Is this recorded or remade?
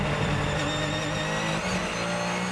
recorded